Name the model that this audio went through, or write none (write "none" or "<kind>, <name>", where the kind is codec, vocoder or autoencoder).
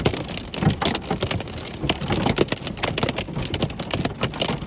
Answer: none